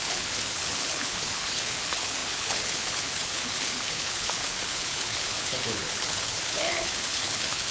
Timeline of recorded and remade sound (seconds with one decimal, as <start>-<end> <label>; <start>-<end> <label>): 0.0-7.7 remade